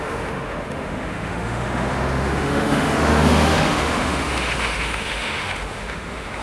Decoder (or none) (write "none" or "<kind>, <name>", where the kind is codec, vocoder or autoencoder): autoencoder, DAC-VAE